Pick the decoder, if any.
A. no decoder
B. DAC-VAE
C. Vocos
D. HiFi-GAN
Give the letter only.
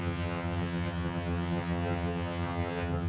D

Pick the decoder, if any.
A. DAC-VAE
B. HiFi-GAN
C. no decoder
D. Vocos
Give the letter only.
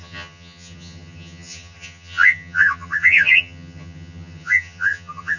B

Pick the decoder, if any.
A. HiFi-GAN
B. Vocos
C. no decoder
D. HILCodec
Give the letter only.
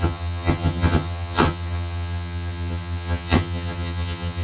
A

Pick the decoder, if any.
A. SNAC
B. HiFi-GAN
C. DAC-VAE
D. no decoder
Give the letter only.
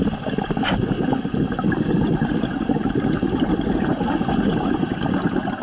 D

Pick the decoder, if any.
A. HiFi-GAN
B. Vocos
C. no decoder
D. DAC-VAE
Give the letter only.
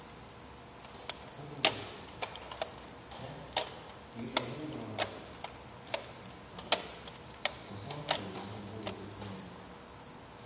C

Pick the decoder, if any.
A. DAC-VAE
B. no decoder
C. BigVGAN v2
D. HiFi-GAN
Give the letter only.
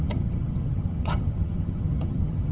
D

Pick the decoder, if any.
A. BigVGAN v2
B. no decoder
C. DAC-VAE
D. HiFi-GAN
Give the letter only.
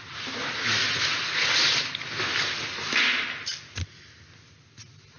B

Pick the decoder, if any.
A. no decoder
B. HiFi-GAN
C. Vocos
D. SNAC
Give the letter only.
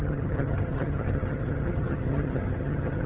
B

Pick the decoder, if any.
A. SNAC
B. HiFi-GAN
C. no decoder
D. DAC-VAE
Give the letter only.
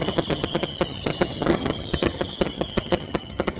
B